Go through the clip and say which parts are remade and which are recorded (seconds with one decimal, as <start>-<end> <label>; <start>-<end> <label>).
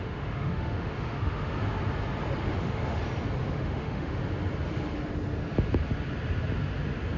0.0-1.5 remade; 1.5-2.6 recorded; 2.6-3.0 remade; 3.0-3.5 recorded; 3.5-4.2 remade; 4.2-7.2 recorded